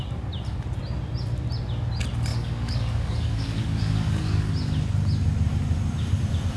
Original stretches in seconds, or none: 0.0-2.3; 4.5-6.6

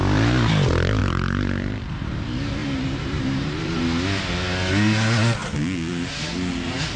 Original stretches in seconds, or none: 0.0-1.0; 2.2-2.6; 3.8-7.0

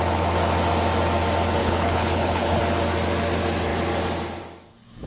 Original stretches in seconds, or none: 0.0-1.6; 2.6-5.1

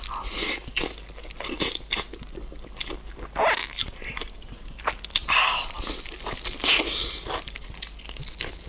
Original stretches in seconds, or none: 0.0-3.8; 4.9-8.7

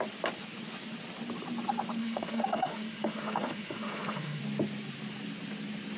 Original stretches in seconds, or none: 0.0-2.0; 4.4-6.0